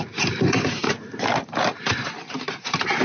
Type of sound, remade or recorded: remade